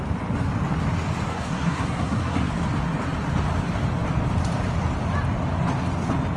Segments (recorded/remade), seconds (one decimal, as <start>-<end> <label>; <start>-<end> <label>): 0.0-1.3 recorded; 1.3-2.5 remade; 2.5-6.4 recorded

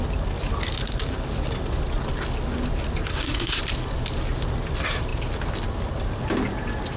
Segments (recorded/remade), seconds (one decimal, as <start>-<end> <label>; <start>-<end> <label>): 0.0-3.1 recorded; 3.1-3.6 remade; 3.6-7.0 recorded

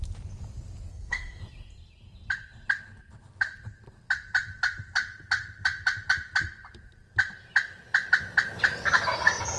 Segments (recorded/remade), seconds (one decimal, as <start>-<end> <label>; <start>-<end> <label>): 0.0-0.9 recorded; 0.9-1.4 remade; 1.4-9.6 recorded

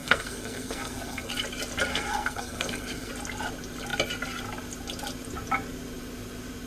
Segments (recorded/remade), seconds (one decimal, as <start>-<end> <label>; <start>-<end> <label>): 0.0-1.3 remade; 1.3-1.9 recorded; 1.9-3.1 remade; 3.1-6.7 recorded

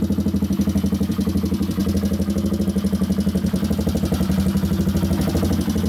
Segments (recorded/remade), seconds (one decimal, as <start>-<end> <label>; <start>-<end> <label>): 0.0-5.9 recorded

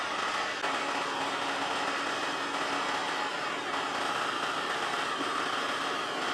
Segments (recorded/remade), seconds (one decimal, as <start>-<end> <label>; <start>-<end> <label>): 0.0-6.3 recorded